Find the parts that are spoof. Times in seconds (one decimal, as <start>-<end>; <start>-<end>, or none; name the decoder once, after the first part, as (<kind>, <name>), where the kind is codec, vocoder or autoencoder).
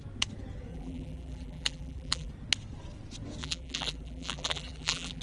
0.7-2.3 (vocoder, BigVGAN v2); 3.4-5.2